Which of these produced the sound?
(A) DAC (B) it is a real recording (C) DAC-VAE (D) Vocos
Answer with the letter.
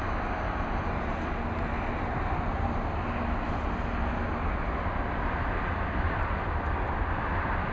B